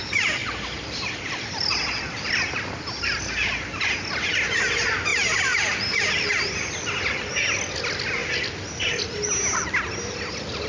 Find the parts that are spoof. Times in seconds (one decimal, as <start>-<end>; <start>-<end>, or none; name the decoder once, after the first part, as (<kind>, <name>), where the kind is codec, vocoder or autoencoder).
0.4-2.4 (vocoder, BigVGAN v2); 8.2-9.0